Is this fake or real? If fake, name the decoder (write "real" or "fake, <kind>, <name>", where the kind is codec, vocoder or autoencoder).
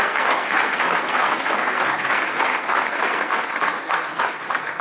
fake, codec, SNAC